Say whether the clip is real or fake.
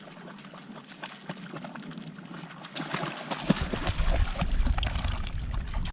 real